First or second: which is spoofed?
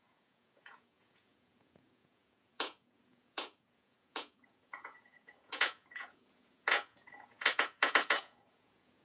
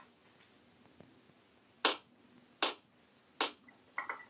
first